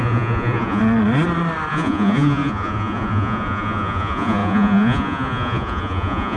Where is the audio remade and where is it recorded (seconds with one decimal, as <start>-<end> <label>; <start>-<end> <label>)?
0.0-0.8 remade; 0.8-1.7 recorded; 1.7-6.4 remade